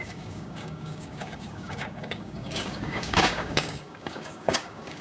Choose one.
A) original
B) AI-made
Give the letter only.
B